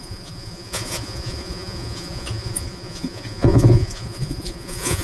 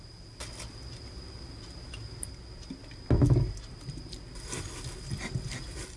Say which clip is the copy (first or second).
first